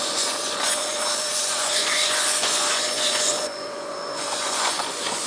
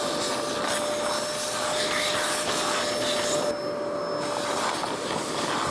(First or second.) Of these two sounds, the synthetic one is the first